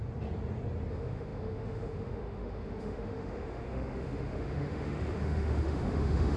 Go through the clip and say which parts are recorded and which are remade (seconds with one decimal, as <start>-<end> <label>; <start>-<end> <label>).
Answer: 0.0-0.9 recorded; 0.9-6.4 remade